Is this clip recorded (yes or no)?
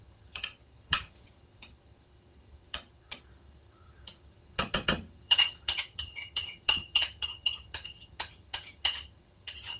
no